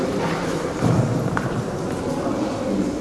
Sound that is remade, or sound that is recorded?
remade